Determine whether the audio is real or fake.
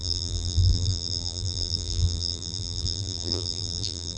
fake